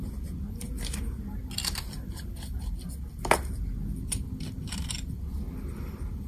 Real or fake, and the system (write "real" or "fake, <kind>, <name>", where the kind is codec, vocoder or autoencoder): real